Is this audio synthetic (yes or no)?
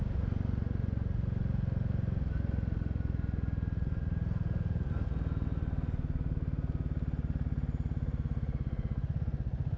no